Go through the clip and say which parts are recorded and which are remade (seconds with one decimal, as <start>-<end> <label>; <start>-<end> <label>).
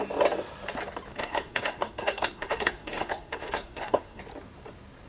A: 0.0-1.1 recorded; 1.1-4.2 remade; 4.2-5.1 recorded